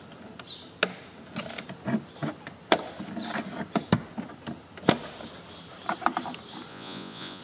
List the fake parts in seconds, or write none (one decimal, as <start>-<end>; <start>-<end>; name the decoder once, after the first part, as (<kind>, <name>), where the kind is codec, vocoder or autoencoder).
6.7-7.4 (vocoder, Vocos)